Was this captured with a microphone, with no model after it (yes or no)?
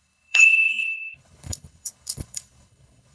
no